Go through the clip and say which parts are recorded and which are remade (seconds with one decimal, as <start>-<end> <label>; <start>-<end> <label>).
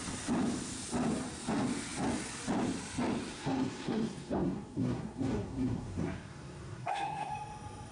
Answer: 0.0-3.3 recorded; 3.3-7.3 remade; 7.3-7.9 recorded